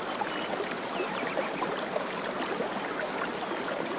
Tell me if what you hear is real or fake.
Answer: real